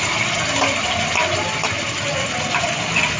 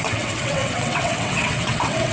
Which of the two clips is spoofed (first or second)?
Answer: second